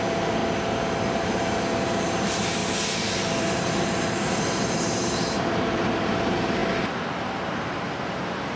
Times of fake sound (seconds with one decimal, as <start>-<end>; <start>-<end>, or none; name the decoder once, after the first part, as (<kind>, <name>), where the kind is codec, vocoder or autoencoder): 0.0-0.4 (vocoder, BigVGAN v2); 1.1-2.6; 3.3-6.6